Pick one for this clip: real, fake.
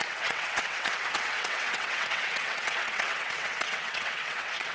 fake